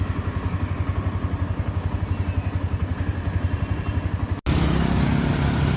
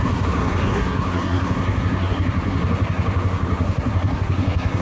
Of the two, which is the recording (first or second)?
first